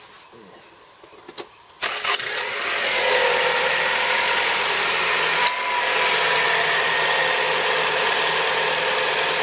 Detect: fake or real real